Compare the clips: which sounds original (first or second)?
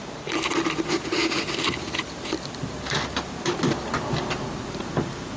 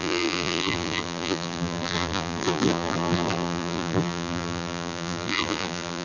first